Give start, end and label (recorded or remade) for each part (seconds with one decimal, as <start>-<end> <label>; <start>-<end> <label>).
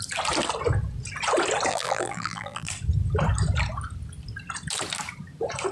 0.0-1.7 recorded; 1.7-2.7 remade; 2.7-5.7 recorded